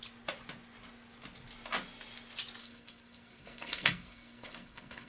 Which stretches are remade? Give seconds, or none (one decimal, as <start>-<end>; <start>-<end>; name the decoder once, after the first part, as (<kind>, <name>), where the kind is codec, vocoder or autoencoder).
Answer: 2.6-5.1 (codec, SNAC)